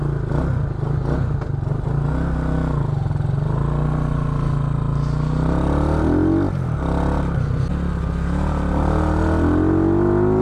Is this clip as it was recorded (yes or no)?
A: yes